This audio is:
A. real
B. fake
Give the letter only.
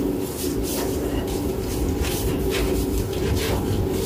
B